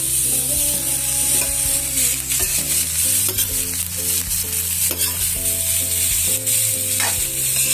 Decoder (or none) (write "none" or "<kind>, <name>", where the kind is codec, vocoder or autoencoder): vocoder, BigVGAN v2